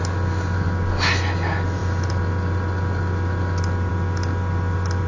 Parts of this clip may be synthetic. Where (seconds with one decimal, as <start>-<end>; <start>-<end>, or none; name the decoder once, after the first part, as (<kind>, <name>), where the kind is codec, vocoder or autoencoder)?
none